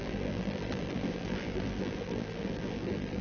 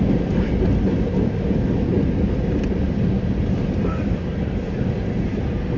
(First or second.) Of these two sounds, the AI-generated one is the first